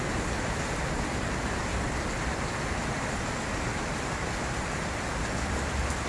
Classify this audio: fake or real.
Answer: real